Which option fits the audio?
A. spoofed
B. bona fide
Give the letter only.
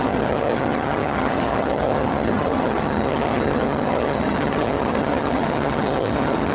A